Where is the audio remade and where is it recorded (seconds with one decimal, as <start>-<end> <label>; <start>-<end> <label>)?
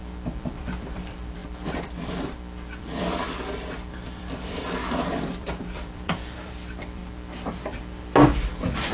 0.0-7.0 remade; 7.0-8.9 recorded